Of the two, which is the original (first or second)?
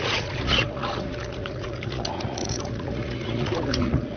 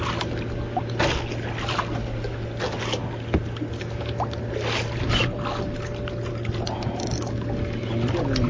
second